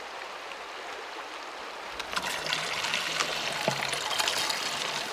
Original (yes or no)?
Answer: yes